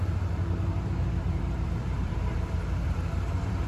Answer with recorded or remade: remade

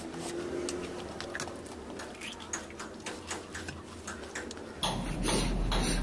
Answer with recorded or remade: recorded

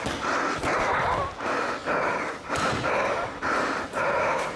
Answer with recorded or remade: recorded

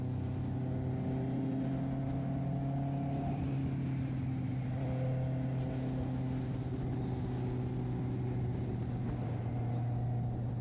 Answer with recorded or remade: recorded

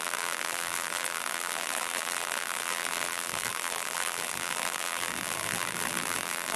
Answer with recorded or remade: remade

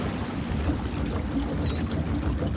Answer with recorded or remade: remade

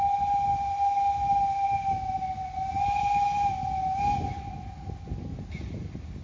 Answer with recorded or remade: recorded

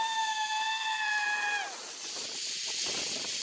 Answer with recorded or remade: recorded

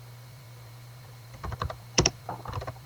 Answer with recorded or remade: remade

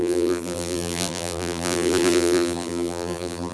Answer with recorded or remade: remade